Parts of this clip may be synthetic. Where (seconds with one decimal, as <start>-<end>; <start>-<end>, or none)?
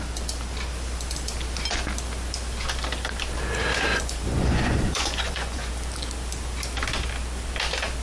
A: 3.9-5.7